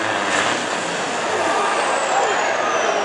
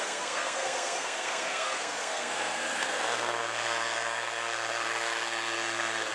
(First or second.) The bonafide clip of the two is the first